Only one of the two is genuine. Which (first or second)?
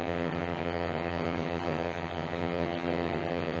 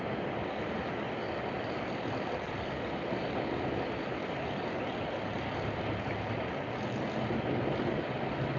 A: second